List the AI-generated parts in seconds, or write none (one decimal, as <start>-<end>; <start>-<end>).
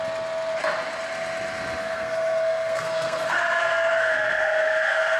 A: 1.8-5.2